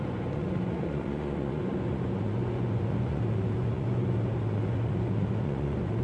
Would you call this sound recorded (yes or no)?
no